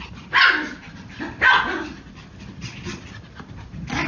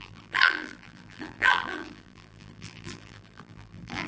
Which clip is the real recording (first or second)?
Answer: first